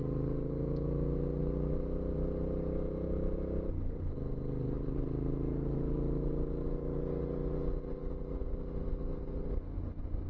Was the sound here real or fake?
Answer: real